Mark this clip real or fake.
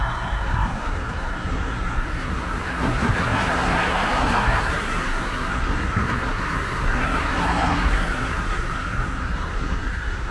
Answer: fake